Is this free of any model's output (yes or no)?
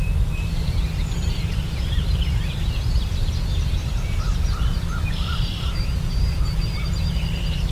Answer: no